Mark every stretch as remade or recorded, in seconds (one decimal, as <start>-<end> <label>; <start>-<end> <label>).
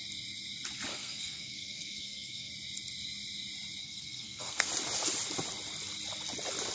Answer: 0.0-0.9 recorded; 0.9-2.5 remade; 2.5-3.8 recorded; 3.8-4.7 remade; 4.7-6.7 recorded